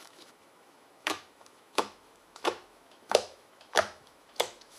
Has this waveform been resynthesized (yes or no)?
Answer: yes